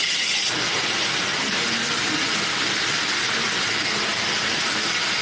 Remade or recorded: recorded